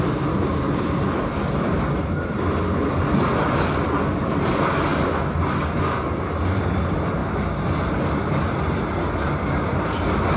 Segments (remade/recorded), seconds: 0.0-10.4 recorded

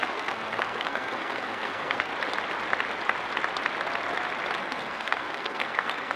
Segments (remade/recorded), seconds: 0.0-2.1 remade; 2.1-4.6 recorded; 4.6-6.2 remade

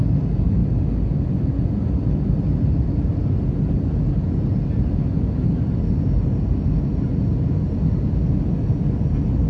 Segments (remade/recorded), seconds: 0.0-9.5 recorded

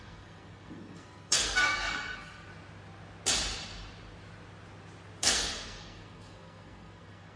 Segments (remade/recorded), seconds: 0.0-2.5 remade; 2.5-5.2 recorded; 5.2-7.4 remade

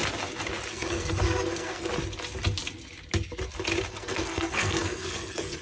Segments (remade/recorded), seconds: 0.0-0.7 recorded; 0.7-1.9 remade; 1.9-3.9 recorded; 3.9-5.6 remade

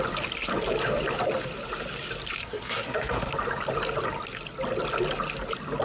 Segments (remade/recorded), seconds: 0.0-2.4 recorded; 2.4-3.3 remade; 3.3-5.8 recorded

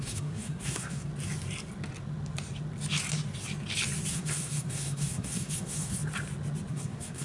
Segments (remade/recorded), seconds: 0.0-1.1 remade; 1.1-4.1 recorded; 4.1-6.0 remade; 6.0-6.7 recorded; 6.7-7.2 remade

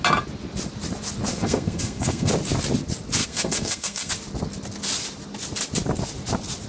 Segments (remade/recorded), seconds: 0.0-1.3 recorded; 1.3-2.3 remade; 2.3-3.2 recorded; 3.2-4.1 remade; 4.1-6.7 recorded